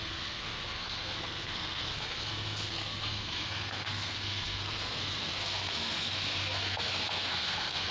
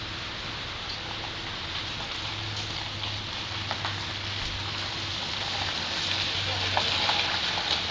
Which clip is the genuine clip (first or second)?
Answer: second